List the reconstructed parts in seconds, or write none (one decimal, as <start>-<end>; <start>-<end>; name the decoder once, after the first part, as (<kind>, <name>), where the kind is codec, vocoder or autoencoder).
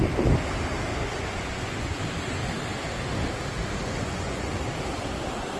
0.9-2.0 (vocoder, Vocos); 3.8-4.5